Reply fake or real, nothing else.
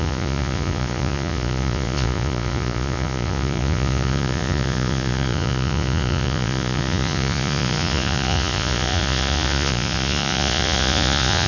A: fake